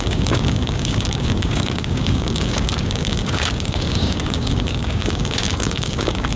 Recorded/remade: remade